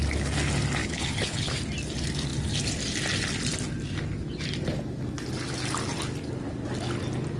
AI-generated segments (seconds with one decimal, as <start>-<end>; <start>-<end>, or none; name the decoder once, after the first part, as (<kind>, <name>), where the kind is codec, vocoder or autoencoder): 0.8-1.6 (codec, HILCodec)